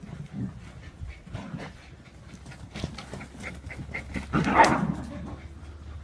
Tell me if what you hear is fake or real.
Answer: real